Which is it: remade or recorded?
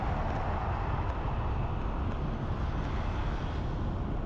recorded